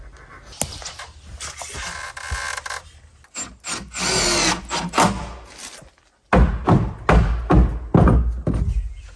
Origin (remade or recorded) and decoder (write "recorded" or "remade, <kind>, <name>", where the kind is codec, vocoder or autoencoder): recorded